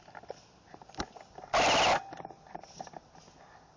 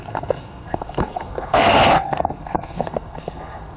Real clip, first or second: first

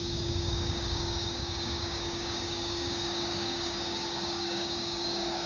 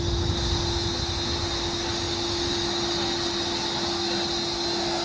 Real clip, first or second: second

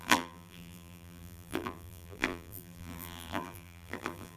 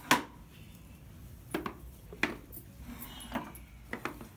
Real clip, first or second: second